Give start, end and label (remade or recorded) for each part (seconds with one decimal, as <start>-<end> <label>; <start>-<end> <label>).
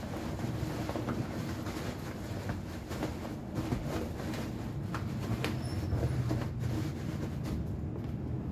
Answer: 0.0-5.7 recorded; 5.7-6.2 remade; 6.2-8.5 recorded